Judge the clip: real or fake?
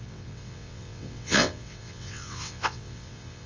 fake